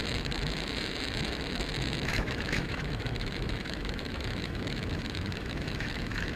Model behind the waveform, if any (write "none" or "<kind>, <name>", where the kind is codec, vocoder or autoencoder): autoencoder, DAC-VAE